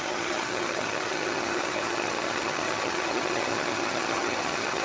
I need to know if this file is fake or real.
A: fake